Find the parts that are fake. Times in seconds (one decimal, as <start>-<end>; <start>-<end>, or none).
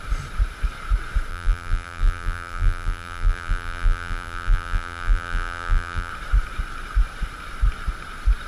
1.3-6.1